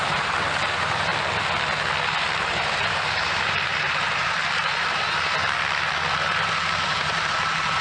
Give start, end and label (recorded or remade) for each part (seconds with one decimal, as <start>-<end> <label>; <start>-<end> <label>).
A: 0.0-1.1 remade; 1.1-2.4 recorded; 2.4-7.8 remade